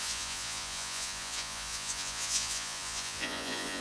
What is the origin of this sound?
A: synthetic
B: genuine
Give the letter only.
A